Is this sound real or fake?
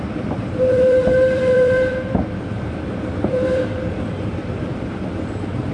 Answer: fake